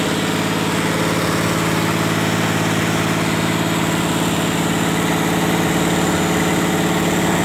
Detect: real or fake real